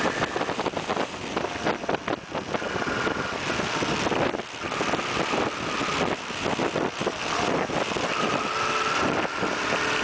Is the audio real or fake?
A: real